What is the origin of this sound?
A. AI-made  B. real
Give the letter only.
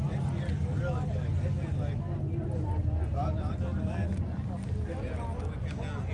B